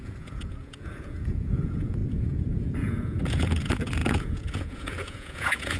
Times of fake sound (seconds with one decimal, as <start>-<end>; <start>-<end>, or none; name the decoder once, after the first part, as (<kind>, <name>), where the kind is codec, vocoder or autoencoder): 0.0-5.8 (vocoder, Vocos)